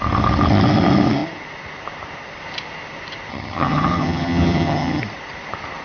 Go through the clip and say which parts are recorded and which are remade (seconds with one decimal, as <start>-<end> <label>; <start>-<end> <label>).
0.0-3.3 recorded; 3.3-5.0 remade; 5.0-5.8 recorded